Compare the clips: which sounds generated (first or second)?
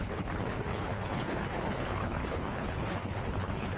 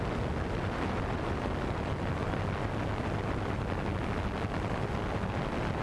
first